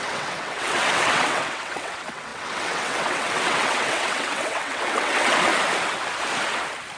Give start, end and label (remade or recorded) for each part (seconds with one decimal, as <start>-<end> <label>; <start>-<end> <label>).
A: 0.0-5.5 remade; 5.5-7.0 recorded